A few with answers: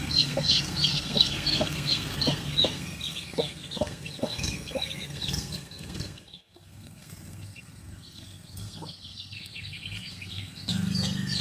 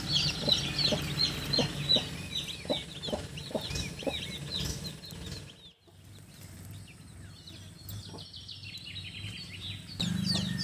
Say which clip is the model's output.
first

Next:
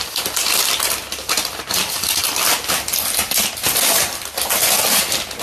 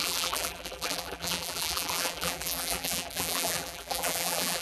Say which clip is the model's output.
second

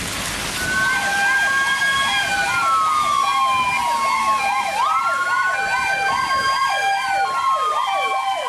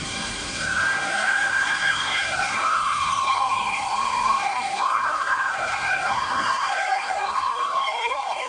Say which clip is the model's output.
second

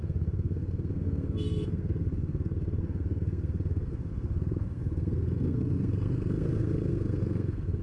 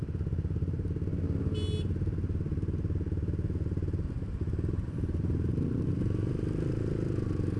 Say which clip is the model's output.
first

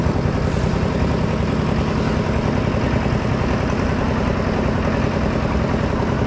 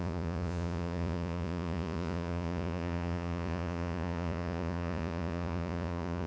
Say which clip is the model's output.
second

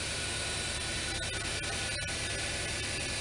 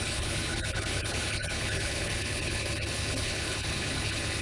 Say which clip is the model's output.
second